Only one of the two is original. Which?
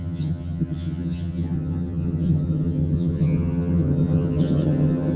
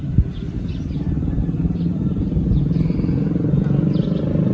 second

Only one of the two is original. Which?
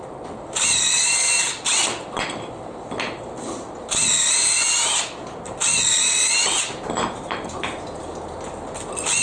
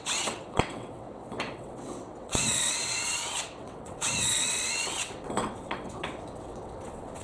first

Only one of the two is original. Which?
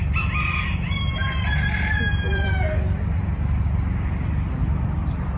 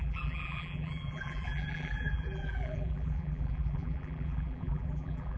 first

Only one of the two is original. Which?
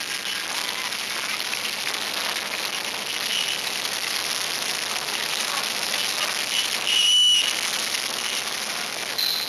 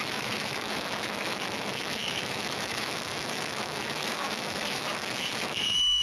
first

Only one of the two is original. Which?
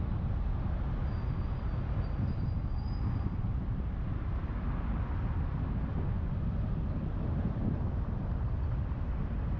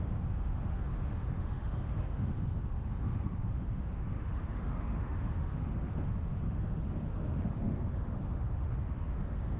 first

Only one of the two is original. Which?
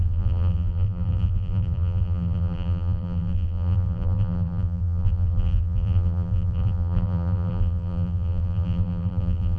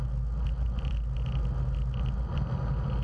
second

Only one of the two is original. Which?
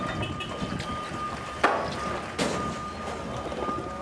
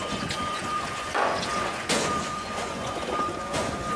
first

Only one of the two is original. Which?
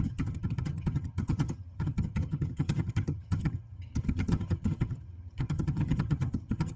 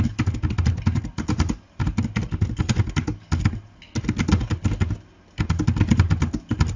second